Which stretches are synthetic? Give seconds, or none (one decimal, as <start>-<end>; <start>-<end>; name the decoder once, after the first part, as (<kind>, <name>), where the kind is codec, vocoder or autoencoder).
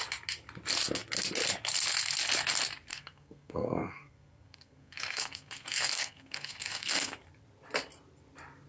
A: 2.9-7.2 (codec, SNAC)